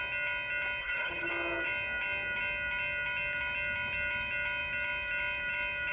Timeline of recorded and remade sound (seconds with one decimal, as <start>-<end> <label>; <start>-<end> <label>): 0.0-0.8 recorded; 0.8-1.3 remade; 1.3-5.9 recorded